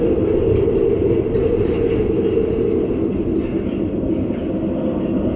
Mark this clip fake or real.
real